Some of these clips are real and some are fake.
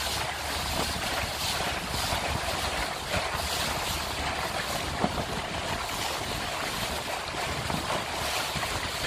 real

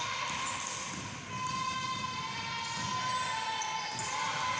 real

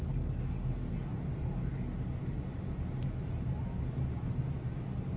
real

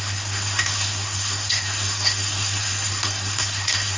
fake